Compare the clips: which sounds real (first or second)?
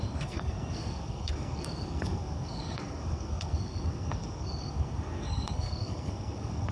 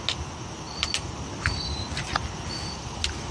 second